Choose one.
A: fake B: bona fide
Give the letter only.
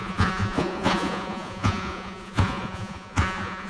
A